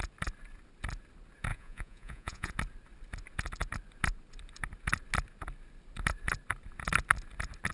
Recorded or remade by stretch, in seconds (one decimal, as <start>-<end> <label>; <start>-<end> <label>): 0.0-1.5 recorded; 1.5-2.5 remade; 2.5-7.7 recorded